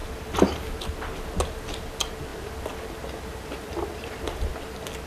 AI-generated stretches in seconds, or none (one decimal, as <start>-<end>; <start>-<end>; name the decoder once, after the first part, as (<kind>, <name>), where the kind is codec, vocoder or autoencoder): 0.0-0.9 (vocoder, BigVGAN v2); 2.3-4.5